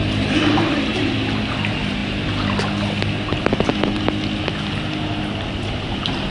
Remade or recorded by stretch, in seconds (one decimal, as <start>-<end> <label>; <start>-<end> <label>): 0.0-6.3 recorded